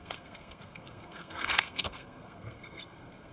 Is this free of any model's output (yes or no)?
no